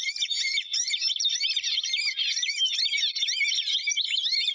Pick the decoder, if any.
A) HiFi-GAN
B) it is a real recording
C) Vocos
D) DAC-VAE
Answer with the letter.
B